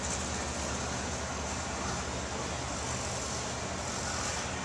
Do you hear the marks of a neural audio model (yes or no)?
no